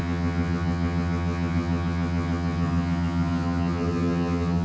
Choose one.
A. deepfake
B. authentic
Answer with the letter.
A